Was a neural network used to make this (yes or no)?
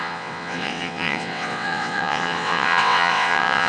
yes